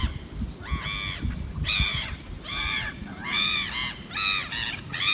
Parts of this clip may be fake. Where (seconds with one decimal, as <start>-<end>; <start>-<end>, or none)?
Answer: 1.9-3.7